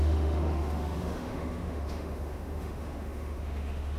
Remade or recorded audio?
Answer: remade